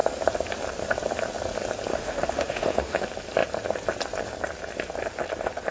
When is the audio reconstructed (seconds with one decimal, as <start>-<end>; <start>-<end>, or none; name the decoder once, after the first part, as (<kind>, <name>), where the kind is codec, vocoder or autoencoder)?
1.9-3.0 (autoencoder, DAC-VAE)